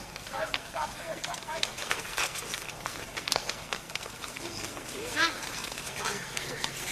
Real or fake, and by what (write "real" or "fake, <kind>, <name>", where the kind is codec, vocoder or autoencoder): fake, codec, SNAC